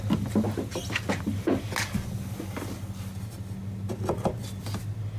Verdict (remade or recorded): recorded